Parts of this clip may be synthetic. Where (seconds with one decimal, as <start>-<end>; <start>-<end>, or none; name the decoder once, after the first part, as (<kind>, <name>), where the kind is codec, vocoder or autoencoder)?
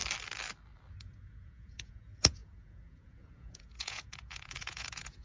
0.9-5.2 (vocoder, Vocos)